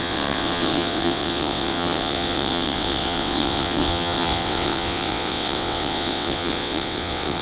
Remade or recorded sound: remade